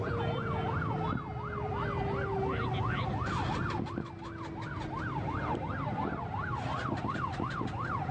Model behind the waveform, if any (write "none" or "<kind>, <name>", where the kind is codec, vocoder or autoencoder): none